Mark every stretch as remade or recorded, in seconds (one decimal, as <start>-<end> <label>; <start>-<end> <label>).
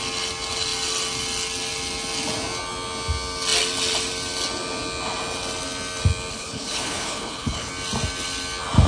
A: 0.0-6.3 recorded; 6.3-7.7 remade; 7.7-8.9 recorded